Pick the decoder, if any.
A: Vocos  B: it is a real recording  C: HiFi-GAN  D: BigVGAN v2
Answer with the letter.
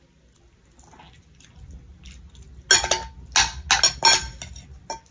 B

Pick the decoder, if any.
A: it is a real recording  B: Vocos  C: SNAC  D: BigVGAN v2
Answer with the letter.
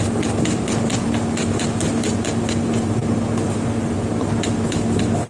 A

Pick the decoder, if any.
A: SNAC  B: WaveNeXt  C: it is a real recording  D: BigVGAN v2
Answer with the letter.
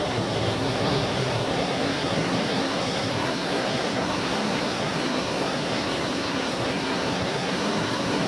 A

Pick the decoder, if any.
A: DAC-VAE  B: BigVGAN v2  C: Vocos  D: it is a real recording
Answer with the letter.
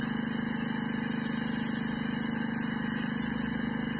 D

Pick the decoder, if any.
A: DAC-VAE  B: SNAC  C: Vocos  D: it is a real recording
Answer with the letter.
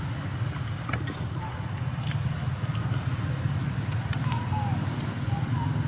D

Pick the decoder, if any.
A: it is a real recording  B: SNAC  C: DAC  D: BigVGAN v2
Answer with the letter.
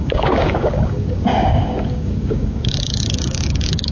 C